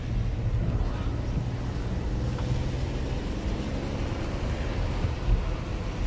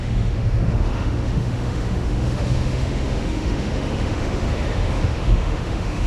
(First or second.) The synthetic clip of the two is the second